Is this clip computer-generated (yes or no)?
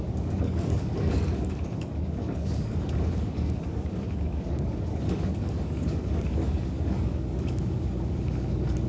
yes